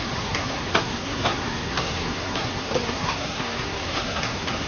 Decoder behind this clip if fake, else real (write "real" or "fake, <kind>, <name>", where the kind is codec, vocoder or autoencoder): fake, codec, SNAC